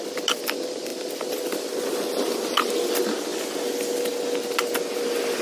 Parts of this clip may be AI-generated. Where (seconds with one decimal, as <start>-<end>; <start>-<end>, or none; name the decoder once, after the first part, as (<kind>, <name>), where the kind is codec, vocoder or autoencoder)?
none